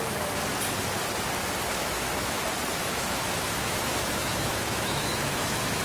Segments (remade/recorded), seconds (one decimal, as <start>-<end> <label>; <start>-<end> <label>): 0.0-1.8 recorded; 1.8-2.4 remade; 2.4-2.8 recorded; 2.8-5.8 remade